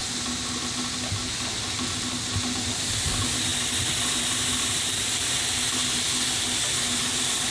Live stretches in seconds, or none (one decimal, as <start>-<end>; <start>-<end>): 0.0-7.5